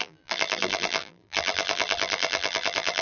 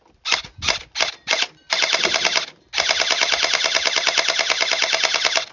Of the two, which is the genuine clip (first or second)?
second